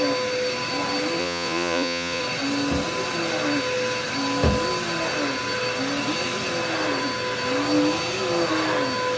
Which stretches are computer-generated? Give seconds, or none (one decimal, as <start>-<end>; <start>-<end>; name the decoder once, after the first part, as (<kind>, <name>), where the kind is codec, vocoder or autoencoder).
1.2-2.2 (vocoder, Vocos)